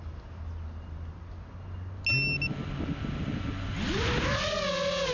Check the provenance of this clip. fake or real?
real